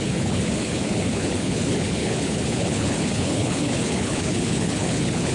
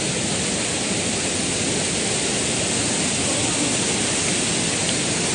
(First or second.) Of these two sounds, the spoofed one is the first